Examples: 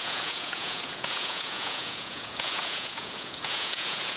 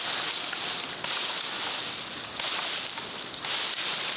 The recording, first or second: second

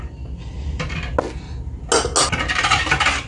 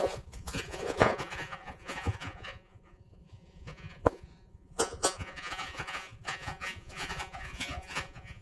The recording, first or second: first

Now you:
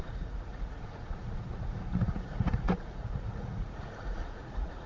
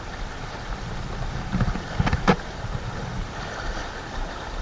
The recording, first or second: second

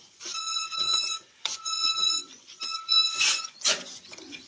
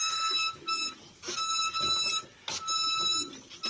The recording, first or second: second